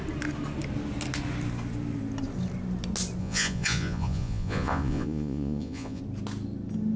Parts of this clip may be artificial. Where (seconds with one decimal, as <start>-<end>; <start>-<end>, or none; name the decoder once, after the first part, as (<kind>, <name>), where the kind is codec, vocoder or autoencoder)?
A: 3.2-6.0 (vocoder, Vocos)